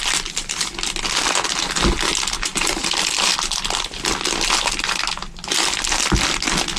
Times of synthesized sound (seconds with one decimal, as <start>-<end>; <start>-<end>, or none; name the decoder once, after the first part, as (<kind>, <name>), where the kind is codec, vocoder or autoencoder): none